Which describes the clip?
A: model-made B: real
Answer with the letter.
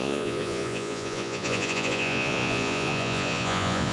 A